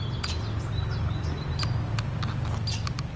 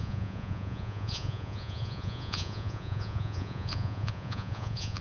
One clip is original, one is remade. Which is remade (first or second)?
second